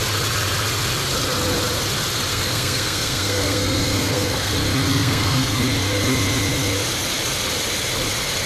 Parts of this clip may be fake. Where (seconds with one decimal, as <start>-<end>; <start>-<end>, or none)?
2.3-4.5; 4.9-5.6

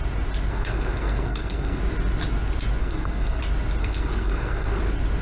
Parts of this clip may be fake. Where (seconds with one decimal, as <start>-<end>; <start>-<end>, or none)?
0.5-1.8; 2.8-3.4; 3.8-4.8

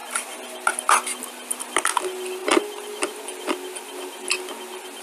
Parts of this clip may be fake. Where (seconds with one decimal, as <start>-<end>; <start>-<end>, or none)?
none

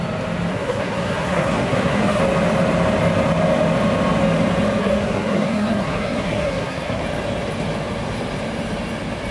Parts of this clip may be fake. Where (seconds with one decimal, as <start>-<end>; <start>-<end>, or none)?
0.5-2.2; 4.8-7.0

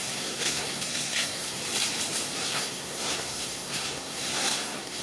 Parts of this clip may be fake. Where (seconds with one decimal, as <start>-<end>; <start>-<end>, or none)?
0.0-1.6; 2.3-5.0